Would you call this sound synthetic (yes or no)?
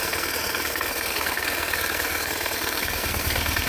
yes